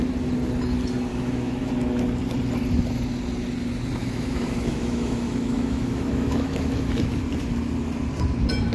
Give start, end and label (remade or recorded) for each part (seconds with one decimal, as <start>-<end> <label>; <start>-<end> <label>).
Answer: 0.0-1.1 recorded; 1.1-1.7 remade; 1.7-4.0 recorded; 4.0-7.2 remade; 7.2-8.7 recorded